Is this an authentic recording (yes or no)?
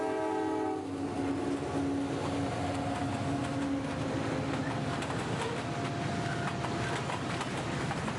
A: yes